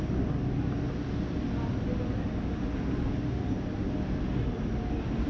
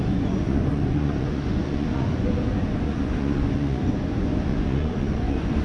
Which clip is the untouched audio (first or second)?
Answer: first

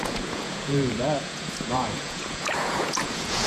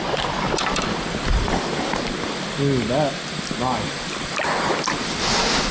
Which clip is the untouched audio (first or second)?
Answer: second